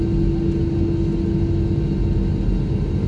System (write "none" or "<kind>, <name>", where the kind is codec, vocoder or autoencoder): none